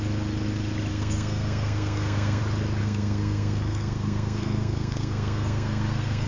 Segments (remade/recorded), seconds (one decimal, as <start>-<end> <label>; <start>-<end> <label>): 0.0-0.9 recorded; 0.9-2.4 remade; 2.4-2.8 recorded; 2.8-6.3 remade